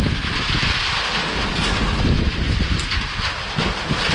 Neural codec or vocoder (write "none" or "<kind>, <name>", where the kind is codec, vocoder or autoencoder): none